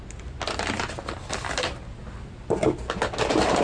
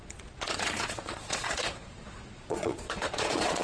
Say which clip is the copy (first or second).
second